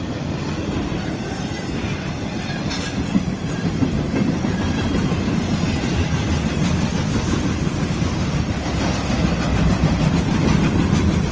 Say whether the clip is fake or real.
real